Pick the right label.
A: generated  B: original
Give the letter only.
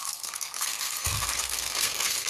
A